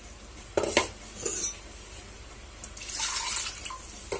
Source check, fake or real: real